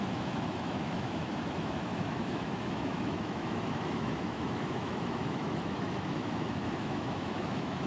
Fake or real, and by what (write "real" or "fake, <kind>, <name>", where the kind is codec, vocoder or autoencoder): fake, autoencoder, DAC-VAE